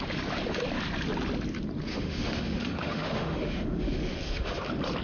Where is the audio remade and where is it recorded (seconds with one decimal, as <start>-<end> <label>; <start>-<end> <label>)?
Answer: 0.0-1.9 recorded; 1.9-4.6 remade; 4.6-5.0 recorded